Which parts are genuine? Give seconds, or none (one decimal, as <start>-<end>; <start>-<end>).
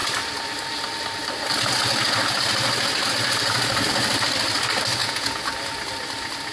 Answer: 0.0-5.0; 5.5-6.5